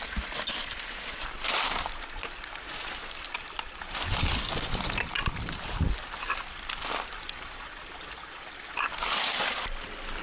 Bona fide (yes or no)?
yes